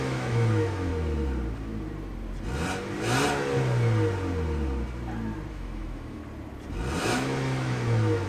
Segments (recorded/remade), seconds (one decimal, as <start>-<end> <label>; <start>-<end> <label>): 0.0-0.9 remade; 0.9-5.5 recorded; 5.5-6.2 remade; 6.2-7.0 recorded; 7.0-8.3 remade